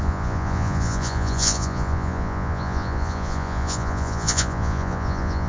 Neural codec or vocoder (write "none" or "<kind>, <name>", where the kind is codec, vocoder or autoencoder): vocoder, Vocos